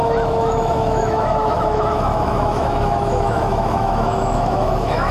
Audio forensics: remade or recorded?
remade